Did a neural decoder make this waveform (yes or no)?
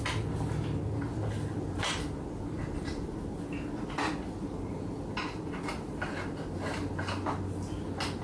no